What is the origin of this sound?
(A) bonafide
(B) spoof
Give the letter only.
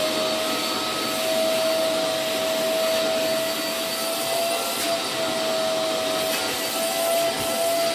A